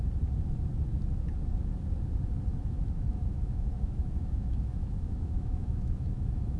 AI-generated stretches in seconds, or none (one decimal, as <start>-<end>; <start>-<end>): 2.5-6.6